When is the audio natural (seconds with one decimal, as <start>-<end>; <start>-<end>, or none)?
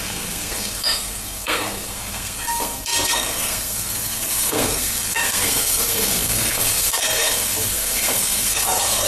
none